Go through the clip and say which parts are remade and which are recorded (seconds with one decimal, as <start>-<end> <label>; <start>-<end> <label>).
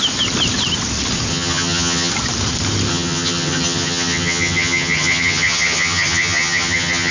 0.0-1.3 recorded; 1.3-2.1 remade; 2.1-2.9 recorded; 2.9-7.1 remade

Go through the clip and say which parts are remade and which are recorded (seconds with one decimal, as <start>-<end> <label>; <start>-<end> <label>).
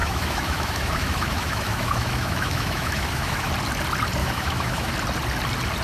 0.0-3.5 remade; 3.5-4.2 recorded; 4.2-4.9 remade; 4.9-5.8 recorded